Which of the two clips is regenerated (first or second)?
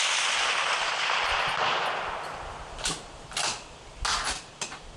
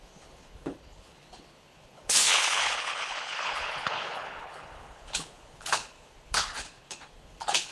second